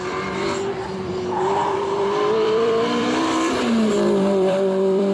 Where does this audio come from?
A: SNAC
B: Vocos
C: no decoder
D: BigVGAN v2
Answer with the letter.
D